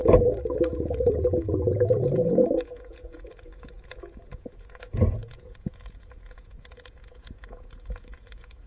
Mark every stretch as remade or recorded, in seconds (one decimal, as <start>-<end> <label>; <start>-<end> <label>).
0.0-0.6 recorded; 0.6-8.7 remade